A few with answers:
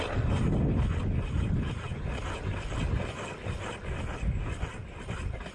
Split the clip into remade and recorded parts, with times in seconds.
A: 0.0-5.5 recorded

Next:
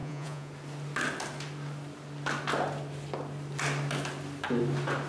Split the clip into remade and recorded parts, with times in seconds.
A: 0.0-0.5 remade; 0.5-5.1 recorded

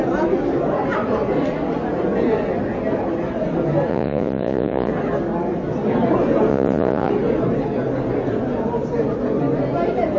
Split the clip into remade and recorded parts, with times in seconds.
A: 0.0-3.9 recorded; 3.9-4.9 remade; 4.9-6.5 recorded; 6.5-7.1 remade; 7.1-10.2 recorded

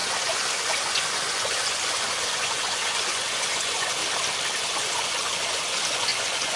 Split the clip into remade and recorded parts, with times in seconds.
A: 0.0-4.0 remade; 4.0-4.5 recorded; 4.5-6.6 remade

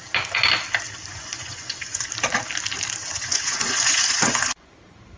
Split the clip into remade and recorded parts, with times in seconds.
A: 0.0-1.1 recorded; 1.1-2.1 remade; 2.1-3.0 recorded; 3.0-4.7 remade; 4.7-5.2 recorded